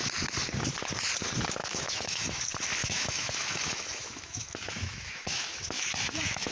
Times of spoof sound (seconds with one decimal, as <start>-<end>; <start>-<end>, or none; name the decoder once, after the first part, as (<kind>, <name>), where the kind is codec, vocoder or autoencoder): 1.6-2.4 (autoencoder, DAC-VAE); 2.8-6.5